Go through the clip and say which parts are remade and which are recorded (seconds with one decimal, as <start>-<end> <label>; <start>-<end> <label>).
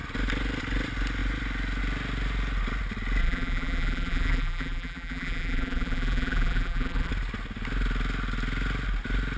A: 0.0-3.2 recorded; 3.2-7.1 remade; 7.1-9.4 recorded